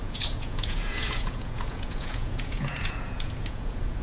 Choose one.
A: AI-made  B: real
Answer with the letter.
A